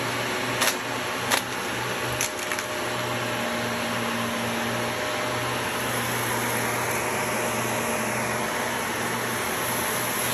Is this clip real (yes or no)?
yes